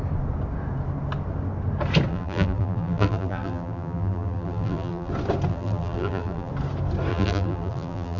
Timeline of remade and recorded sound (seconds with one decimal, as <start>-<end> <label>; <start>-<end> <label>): 0.0-2.1 recorded; 2.1-5.1 remade; 5.1-5.5 recorded; 5.5-6.5 remade; 6.5-7.1 recorded; 7.1-8.2 remade